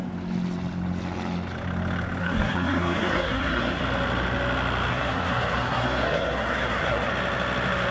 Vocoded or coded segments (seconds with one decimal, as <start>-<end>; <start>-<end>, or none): 2.2-3.8; 4.9-7.1